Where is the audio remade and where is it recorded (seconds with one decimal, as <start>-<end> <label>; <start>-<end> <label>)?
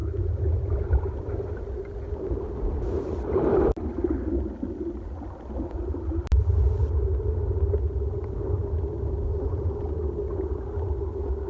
0.0-9.3 recorded; 9.3-9.9 remade; 9.9-11.5 recorded